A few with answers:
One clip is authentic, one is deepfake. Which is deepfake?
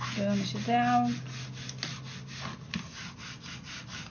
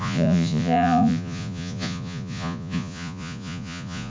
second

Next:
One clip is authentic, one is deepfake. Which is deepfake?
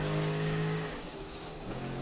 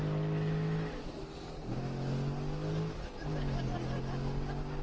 first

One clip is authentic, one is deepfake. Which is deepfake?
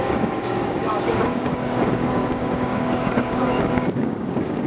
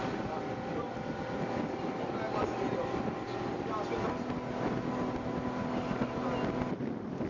first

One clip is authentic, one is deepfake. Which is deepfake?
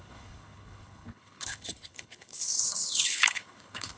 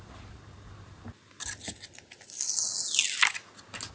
first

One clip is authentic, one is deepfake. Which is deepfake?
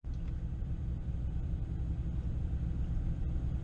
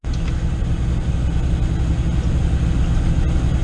first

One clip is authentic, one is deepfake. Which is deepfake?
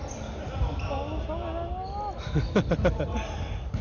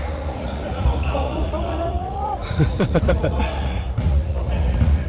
second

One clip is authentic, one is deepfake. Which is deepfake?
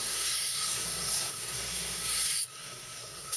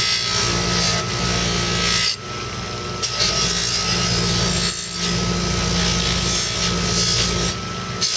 first